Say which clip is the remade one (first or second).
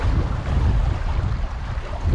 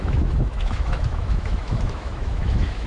second